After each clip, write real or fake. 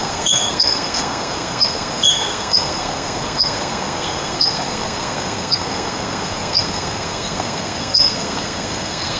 fake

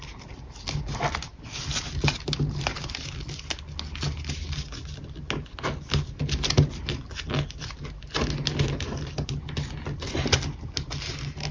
real